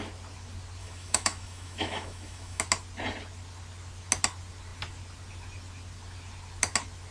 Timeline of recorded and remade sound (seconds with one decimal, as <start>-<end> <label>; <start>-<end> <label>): 0.0-0.8 recorded; 0.8-2.6 remade; 2.6-7.1 recorded